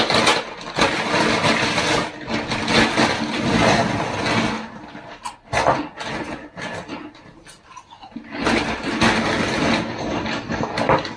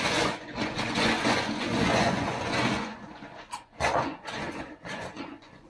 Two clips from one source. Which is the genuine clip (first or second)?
first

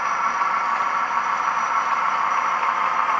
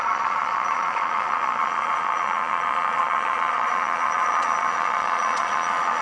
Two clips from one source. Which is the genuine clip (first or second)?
first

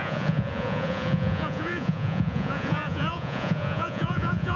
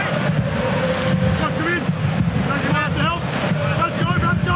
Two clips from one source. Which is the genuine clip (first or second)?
second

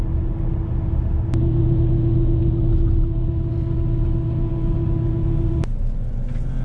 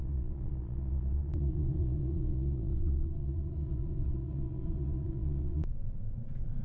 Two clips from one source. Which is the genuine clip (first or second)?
first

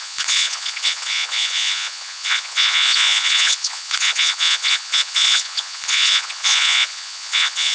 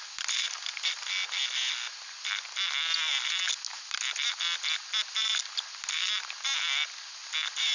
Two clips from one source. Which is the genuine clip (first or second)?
second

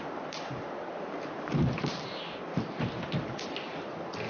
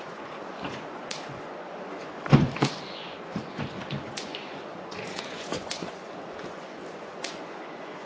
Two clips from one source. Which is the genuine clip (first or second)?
first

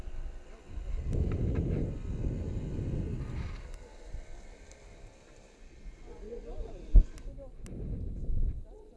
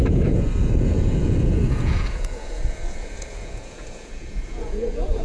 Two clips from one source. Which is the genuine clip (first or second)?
first